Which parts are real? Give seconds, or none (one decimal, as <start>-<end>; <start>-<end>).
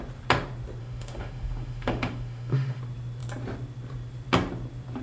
0.0-0.8; 2.8-5.0